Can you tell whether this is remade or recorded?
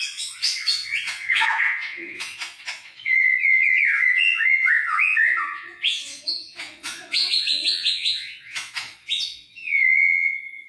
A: remade